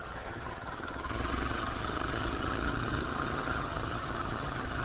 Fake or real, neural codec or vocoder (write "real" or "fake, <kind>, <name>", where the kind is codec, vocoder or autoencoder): fake, vocoder, HiFi-GAN